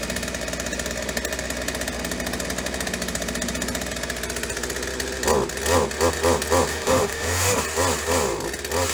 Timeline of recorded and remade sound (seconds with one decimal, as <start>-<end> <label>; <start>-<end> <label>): 0.0-6.7 recorded; 6.7-7.6 remade; 7.6-8.9 recorded